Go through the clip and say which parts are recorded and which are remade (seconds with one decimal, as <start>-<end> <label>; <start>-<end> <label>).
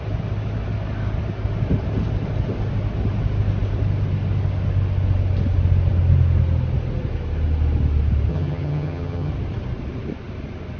0.0-8.3 recorded; 8.3-9.3 remade; 9.3-10.8 recorded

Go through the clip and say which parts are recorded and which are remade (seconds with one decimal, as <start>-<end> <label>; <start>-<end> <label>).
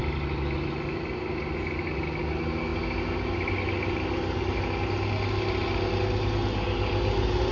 0.0-7.5 recorded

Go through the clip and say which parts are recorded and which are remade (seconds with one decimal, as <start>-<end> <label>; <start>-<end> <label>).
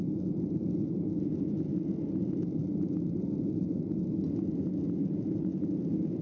0.0-5.0 recorded; 5.0-5.8 remade; 5.8-6.2 recorded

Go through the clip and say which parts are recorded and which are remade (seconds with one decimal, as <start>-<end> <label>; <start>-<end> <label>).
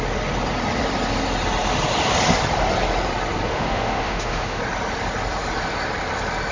0.0-3.5 recorded; 3.5-4.6 remade; 4.6-6.5 recorded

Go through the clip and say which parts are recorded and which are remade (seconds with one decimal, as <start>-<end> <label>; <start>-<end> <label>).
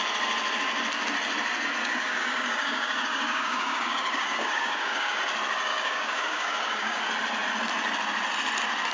0.0-1.8 recorded; 1.8-5.2 remade; 5.2-5.7 recorded; 5.7-7.0 remade; 7.0-8.9 recorded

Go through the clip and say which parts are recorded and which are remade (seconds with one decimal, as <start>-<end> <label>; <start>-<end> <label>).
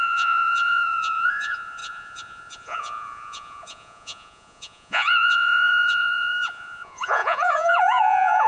0.0-8.5 remade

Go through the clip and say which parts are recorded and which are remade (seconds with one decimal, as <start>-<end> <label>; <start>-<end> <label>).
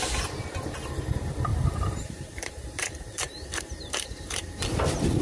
0.0-1.5 recorded; 1.5-4.6 remade; 4.6-5.2 recorded